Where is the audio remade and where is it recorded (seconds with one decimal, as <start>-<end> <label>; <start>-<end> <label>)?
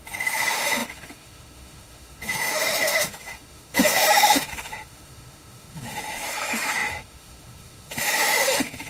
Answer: 0.0-8.9 remade